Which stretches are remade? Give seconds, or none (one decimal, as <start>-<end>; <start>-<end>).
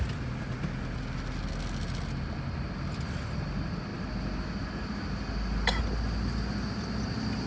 none